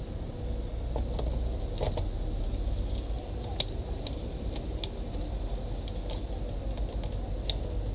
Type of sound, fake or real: real